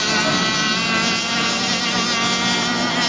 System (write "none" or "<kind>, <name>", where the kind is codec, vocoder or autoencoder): none